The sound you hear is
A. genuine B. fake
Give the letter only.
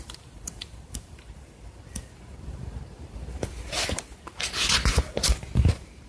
B